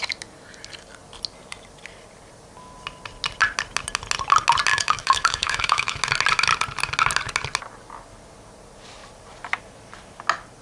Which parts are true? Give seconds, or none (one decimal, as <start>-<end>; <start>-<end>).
0.0-4.7; 6.0-10.6